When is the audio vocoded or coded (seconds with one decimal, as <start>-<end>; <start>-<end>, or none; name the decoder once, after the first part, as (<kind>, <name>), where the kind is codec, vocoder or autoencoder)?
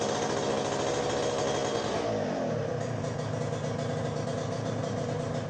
none